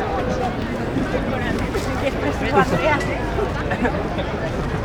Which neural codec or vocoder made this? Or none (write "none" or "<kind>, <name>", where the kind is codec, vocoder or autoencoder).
none